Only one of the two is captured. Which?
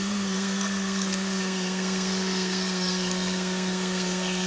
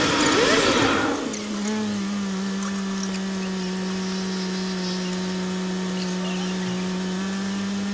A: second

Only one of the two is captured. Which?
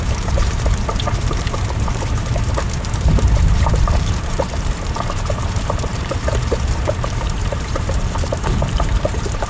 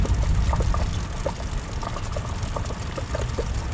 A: second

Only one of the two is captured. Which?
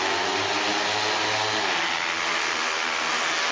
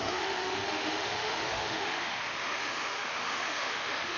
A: first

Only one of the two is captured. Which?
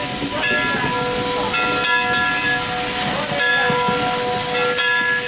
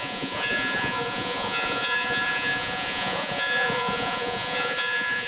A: first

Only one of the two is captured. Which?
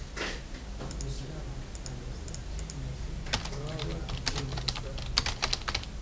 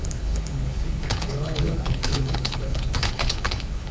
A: first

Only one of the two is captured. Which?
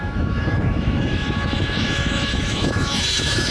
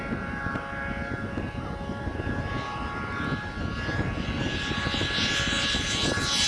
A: second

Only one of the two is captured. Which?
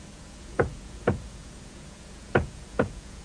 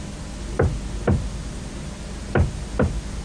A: second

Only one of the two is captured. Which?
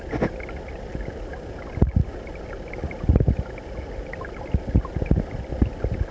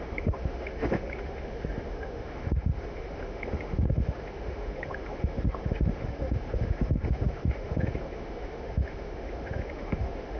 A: first